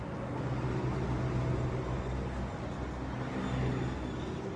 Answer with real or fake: real